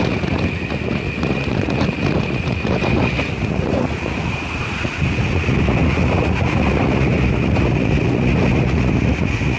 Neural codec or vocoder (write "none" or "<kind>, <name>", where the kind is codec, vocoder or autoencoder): vocoder, Vocos